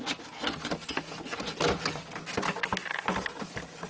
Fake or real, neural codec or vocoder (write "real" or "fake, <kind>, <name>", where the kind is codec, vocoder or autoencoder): real